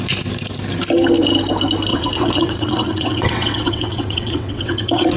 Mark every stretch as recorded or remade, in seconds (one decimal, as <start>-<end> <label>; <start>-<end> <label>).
0.0-1.9 recorded; 1.9-5.2 remade